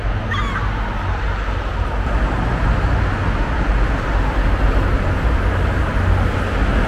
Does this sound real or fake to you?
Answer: real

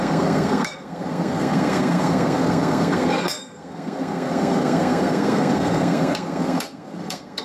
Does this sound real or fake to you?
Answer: fake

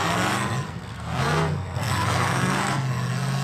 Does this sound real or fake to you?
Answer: fake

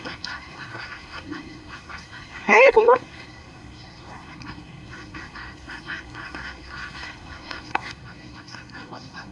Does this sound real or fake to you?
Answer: fake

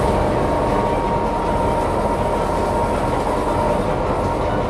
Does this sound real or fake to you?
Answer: real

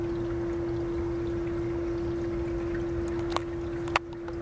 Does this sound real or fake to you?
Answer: real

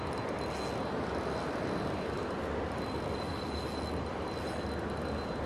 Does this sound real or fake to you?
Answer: real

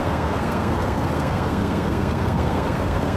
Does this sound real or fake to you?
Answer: fake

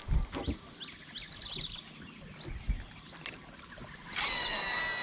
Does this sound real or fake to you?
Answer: real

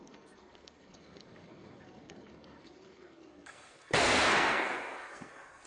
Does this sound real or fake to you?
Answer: fake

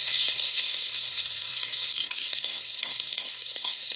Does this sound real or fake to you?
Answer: fake